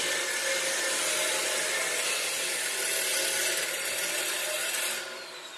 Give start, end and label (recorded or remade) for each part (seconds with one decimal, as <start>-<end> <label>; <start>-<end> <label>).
0.0-5.6 recorded